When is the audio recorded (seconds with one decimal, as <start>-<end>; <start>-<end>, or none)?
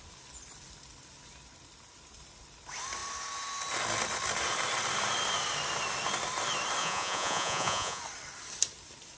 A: 0.0-6.8; 8.0-9.2